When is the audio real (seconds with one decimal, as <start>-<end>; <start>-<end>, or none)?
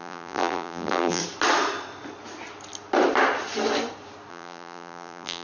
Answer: 1.2-4.3